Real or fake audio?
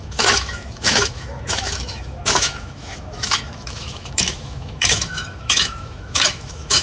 fake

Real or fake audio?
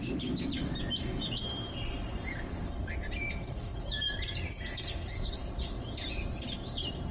fake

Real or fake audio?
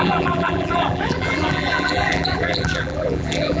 fake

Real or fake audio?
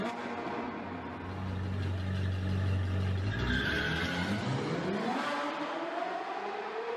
real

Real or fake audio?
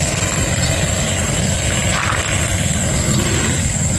real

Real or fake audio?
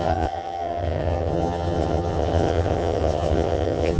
fake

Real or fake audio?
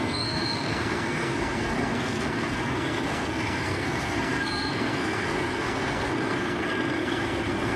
fake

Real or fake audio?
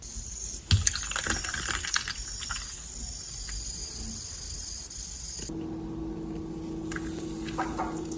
real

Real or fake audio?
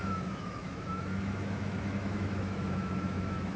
fake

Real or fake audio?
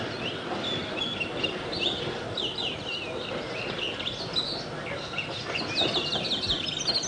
real